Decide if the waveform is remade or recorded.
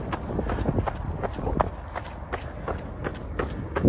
recorded